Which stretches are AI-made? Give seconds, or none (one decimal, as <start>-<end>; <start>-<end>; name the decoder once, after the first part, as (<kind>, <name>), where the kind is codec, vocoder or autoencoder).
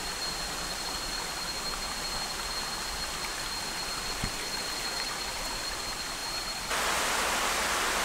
none